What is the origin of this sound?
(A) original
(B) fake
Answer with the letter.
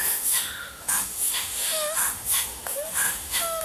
B